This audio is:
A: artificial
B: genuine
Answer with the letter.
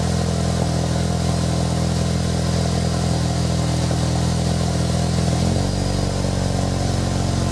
B